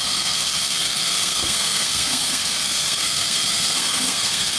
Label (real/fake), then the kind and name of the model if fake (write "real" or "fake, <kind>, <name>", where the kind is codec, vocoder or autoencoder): fake, codec, SNAC